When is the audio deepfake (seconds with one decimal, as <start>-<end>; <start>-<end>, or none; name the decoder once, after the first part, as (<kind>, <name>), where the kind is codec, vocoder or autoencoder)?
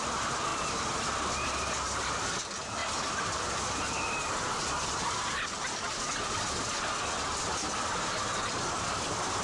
0.0-9.4 (vocoder, BigVGAN v2)